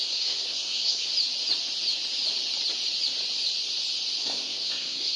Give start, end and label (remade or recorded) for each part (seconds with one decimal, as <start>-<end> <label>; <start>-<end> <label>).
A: 0.0-1.1 remade; 1.1-4.2 recorded; 4.2-5.2 remade